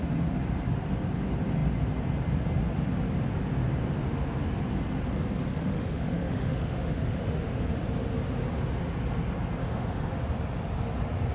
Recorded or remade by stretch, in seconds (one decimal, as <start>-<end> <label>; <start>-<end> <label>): 0.0-5.5 recorded; 5.5-7.6 remade; 7.6-9.6 recorded; 9.6-10.1 remade; 10.1-11.3 recorded